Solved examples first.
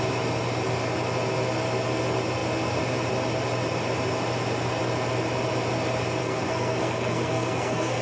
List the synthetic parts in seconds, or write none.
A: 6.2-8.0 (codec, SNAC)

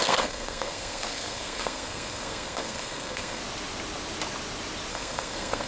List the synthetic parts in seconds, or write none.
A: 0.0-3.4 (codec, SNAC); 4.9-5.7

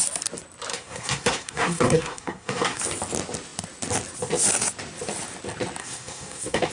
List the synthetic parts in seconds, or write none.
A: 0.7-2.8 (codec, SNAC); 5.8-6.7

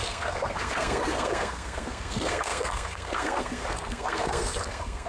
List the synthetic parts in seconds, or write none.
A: 0.0-5.1 (codec, SNAC)

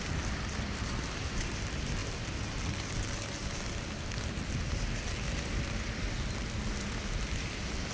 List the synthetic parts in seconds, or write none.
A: none